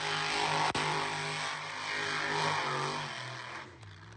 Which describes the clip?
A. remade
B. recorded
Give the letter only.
B